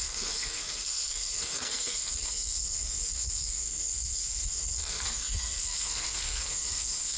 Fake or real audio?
fake